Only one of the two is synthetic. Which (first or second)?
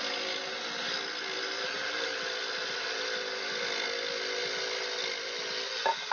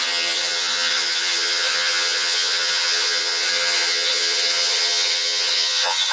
second